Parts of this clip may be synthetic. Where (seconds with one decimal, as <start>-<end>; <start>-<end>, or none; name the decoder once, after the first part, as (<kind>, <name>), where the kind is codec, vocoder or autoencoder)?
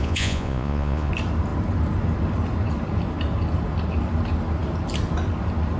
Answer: 0.0-1.1 (vocoder, Vocos)